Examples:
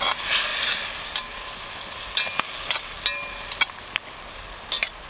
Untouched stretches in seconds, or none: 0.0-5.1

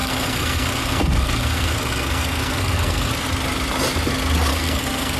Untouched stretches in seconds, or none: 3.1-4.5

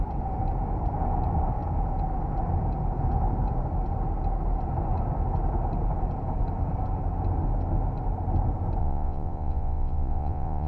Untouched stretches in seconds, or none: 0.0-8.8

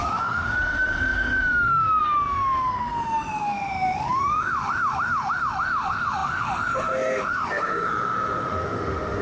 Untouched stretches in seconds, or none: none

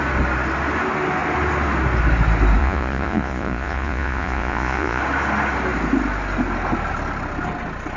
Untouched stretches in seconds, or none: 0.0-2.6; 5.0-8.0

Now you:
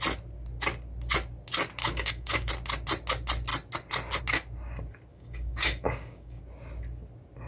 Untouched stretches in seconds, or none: 0.0-1.8; 2.5-5.1; 6.4-7.5

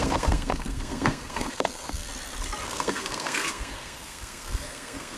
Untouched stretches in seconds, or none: 2.1-2.6